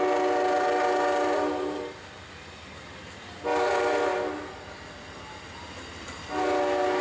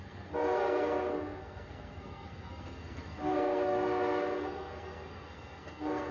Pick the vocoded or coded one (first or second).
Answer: second